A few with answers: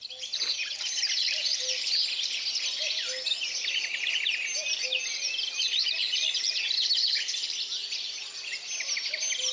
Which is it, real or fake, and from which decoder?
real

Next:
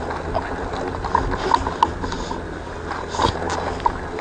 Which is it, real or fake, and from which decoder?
real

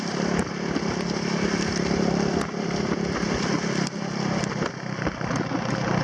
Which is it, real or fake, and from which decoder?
real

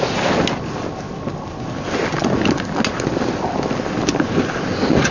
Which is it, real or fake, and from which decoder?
real